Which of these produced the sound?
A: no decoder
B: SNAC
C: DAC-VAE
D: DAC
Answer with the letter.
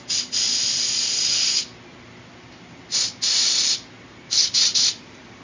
A